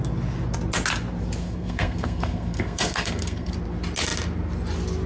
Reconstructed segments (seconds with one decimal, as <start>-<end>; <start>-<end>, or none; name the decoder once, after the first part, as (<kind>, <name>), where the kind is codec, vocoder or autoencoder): 1.4-3.5 (codec, SNAC)